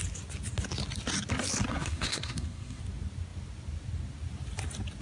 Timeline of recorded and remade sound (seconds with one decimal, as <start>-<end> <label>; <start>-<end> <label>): 0.0-1.7 recorded; 1.7-2.8 remade; 2.8-5.0 recorded